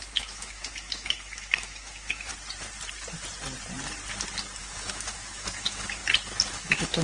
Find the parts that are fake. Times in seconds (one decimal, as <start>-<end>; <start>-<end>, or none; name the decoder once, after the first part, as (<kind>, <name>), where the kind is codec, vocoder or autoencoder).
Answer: 0.0-2.3 (autoencoder, DAC-VAE); 4.6-6.0; 6.5-7.0